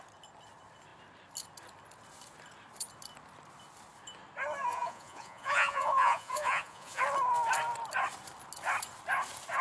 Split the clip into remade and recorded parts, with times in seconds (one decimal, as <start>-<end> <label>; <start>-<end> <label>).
0.0-4.7 recorded; 4.7-7.0 remade; 7.0-9.6 recorded